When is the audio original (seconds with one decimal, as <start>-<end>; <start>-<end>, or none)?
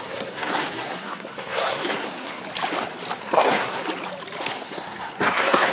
2.4-3.2; 3.8-4.4